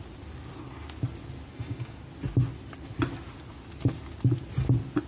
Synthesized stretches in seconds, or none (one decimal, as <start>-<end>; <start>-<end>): 1.5-2.0